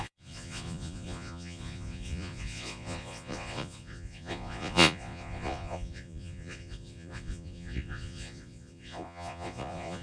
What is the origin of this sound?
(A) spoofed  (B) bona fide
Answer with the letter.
A